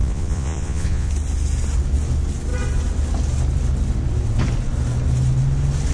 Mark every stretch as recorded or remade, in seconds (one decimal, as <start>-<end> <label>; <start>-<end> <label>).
0.0-1.1 remade; 1.1-5.9 recorded